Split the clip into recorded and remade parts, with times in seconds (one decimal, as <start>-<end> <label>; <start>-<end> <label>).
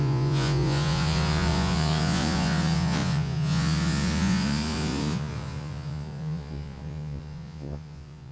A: 0.0-8.3 remade